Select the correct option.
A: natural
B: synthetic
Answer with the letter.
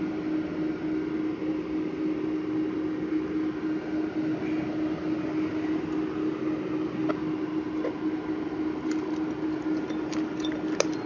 A